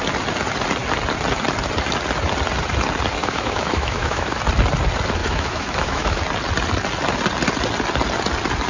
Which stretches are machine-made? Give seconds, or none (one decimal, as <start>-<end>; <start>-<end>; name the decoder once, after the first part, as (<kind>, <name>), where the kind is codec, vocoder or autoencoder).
3.2-4.4 (autoencoder, DAC-VAE); 5.2-6.2